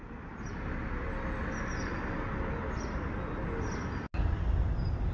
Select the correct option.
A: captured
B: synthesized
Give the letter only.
A